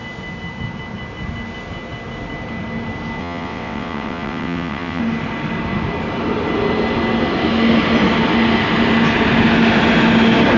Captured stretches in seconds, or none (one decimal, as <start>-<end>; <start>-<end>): 0.0-3.2; 5.0-10.6